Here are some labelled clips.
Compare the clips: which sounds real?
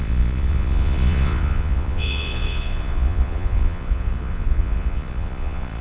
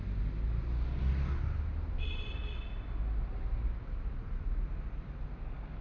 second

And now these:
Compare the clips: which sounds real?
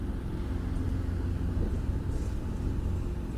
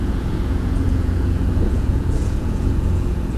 first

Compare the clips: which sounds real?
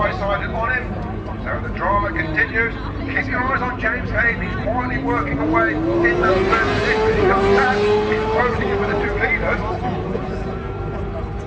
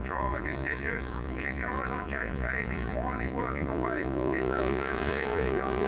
first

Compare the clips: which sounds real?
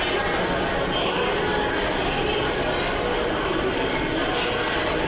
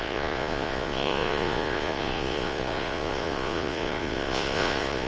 first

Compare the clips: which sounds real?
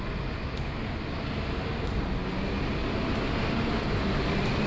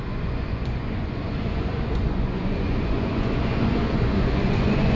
first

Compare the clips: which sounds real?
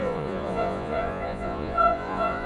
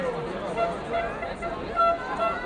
second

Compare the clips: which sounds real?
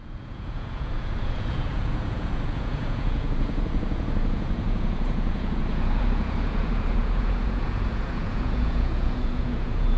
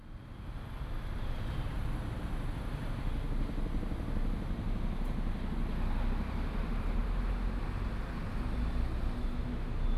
second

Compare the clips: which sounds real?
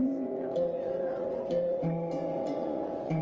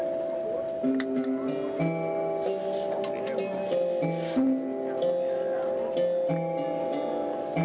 second